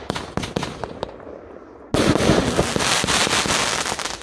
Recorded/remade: recorded